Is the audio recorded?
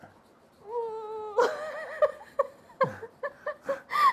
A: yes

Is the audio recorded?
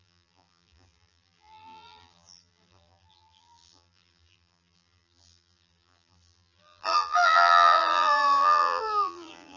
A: no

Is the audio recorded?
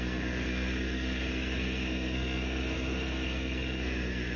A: no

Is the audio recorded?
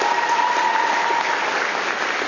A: yes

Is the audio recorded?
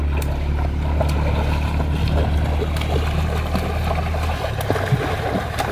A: yes